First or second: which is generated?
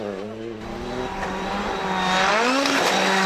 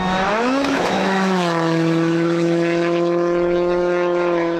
second